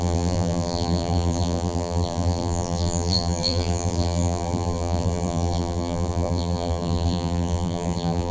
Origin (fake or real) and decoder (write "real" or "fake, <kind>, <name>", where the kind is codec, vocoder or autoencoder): fake, vocoder, BigVGAN v2